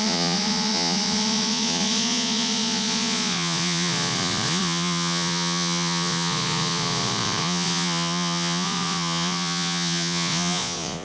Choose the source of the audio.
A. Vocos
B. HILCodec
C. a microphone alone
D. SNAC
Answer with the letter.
A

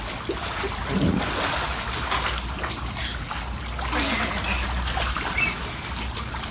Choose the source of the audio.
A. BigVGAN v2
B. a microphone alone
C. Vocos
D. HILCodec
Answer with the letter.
B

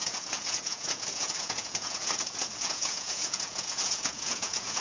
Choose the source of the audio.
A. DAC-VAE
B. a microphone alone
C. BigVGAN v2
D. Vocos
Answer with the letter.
D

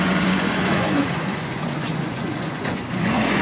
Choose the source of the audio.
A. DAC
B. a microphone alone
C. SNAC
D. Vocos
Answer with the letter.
D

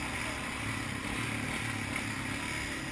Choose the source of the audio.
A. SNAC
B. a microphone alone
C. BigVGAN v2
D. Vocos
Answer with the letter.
B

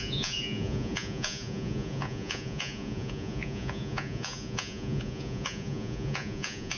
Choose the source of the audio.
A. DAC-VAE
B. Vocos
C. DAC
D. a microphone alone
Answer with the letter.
B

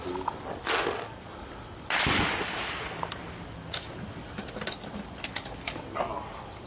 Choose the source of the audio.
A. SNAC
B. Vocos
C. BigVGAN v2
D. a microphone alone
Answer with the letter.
D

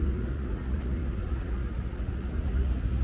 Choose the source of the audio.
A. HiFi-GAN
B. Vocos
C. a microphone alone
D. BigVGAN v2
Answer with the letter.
B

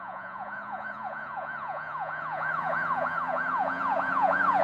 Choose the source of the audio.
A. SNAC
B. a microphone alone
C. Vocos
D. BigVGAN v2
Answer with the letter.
C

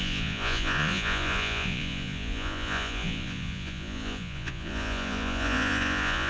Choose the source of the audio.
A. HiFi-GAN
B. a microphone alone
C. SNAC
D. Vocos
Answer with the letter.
D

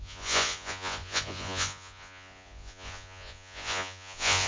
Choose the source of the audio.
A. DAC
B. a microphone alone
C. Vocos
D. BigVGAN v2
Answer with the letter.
C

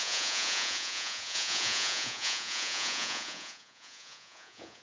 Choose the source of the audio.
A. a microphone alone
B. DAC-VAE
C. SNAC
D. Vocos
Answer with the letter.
D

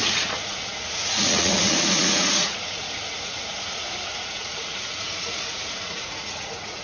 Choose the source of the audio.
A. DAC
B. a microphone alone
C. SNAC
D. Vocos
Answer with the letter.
D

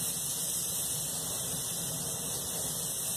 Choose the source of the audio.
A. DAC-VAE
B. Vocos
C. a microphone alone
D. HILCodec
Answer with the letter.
C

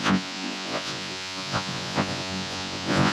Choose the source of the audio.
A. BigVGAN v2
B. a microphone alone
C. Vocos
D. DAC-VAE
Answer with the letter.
C